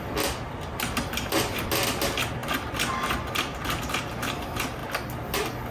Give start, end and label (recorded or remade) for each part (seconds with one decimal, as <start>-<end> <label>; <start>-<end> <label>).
0.0-5.7 recorded